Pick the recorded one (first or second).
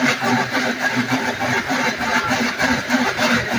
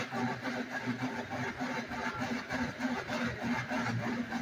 second